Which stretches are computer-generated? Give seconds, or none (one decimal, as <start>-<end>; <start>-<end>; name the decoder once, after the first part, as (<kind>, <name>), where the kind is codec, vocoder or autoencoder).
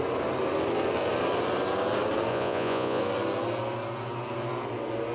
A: 2.3-3.0 (vocoder, Vocos)